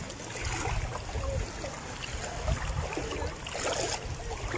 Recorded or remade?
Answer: recorded